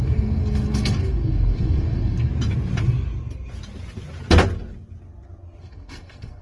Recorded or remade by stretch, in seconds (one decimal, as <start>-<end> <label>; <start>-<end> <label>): 0.0-2.3 remade; 2.3-5.6 recorded; 5.6-6.4 remade

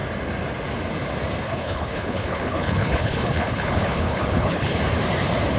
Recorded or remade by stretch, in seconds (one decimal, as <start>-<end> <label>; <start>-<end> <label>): 0.0-1.4 recorded; 1.4-4.8 remade; 4.8-5.6 recorded